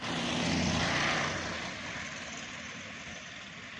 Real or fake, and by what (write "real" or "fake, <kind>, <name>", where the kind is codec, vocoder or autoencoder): real